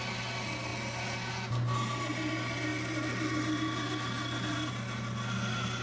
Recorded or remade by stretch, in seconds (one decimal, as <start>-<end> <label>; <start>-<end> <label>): 0.0-5.8 recorded